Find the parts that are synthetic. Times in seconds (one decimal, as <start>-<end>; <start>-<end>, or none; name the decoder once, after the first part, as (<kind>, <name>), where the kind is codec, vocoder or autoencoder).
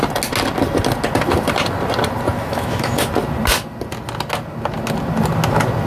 2.4-3.1 (autoencoder, DAC-VAE)